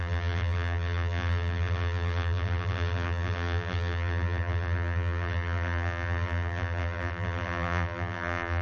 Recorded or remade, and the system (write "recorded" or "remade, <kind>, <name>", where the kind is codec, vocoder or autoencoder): remade, vocoder, BigVGAN v2